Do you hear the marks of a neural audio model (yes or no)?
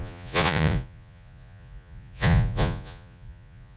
yes